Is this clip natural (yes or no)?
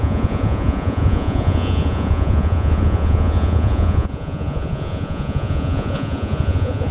no